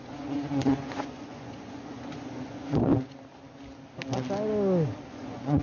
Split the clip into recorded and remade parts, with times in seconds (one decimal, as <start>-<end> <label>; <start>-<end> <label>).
0.0-2.9 remade; 2.9-5.1 recorded; 5.1-5.6 remade